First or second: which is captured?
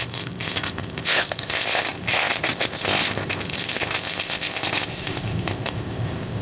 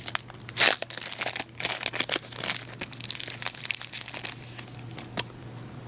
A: second